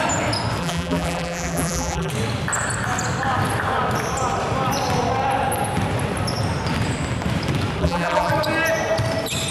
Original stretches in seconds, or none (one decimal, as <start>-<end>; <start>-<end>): 0.0-0.6; 2.1-7.8; 8.3-9.5